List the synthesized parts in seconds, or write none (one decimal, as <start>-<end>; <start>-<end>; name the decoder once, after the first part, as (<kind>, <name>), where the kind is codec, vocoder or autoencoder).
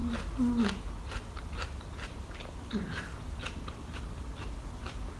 none